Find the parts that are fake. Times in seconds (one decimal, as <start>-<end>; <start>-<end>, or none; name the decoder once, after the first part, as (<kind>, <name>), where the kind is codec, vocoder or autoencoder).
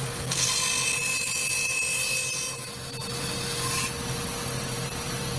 0.0-0.5 (codec, SNAC)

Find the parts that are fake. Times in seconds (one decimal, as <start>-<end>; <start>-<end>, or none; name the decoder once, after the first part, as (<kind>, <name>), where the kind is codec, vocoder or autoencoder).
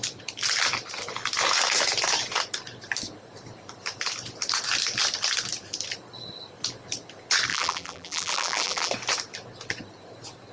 7.5-8.9 (vocoder, BigVGAN v2)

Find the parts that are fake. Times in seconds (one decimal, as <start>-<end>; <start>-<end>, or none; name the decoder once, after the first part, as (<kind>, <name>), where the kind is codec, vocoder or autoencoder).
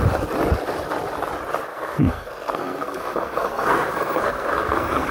1.7-5.1 (codec, SNAC)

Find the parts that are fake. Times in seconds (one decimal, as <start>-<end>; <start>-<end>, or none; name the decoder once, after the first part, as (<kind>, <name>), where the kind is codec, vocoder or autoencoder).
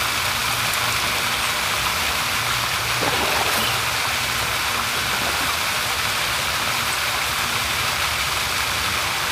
7.6-8.1 (vocoder, BigVGAN v2)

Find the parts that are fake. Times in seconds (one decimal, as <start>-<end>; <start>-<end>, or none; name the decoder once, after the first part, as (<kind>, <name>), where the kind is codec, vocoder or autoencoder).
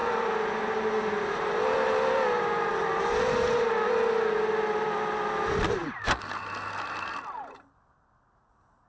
0.0-2.7 (vocoder, BigVGAN v2)